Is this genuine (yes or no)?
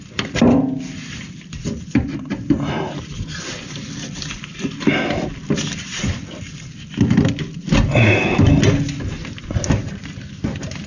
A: yes